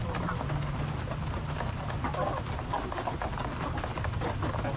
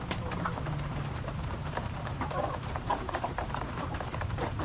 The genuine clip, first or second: first